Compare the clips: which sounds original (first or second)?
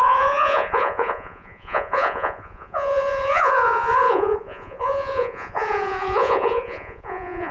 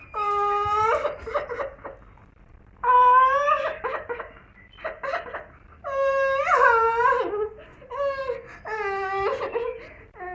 second